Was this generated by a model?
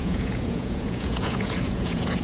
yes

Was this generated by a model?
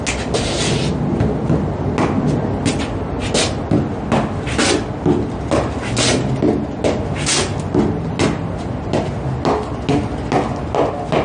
no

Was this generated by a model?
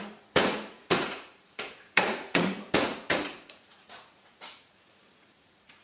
yes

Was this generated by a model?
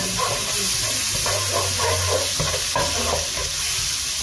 no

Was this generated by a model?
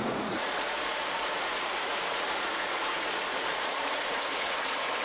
yes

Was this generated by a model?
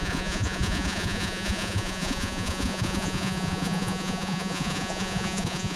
yes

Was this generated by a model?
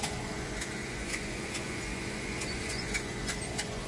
yes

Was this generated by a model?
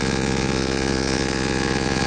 yes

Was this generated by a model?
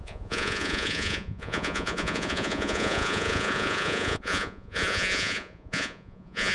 yes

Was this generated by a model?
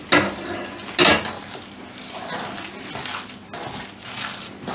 no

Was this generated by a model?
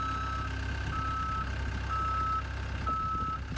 no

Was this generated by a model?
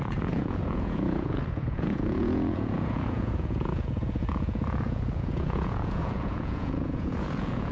yes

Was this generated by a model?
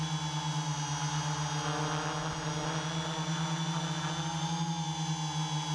no